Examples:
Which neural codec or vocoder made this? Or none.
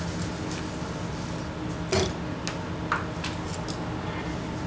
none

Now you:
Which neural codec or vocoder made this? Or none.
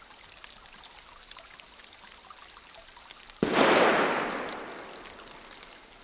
none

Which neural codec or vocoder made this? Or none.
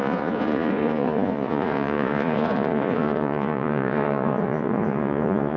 vocoder, Vocos